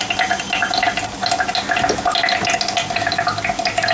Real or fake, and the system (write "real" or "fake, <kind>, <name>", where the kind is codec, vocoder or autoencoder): real